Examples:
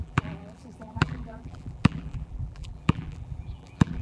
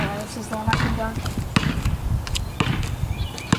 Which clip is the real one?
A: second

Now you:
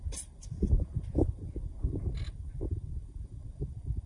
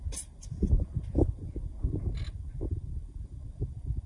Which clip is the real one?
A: second